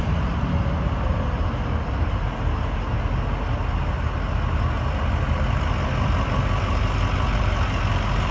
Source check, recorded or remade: recorded